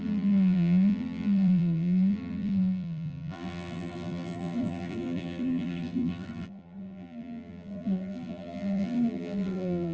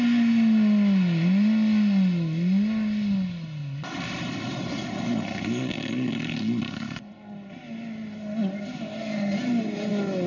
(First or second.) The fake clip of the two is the first